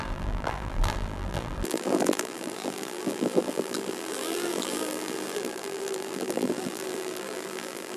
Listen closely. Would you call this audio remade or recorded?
remade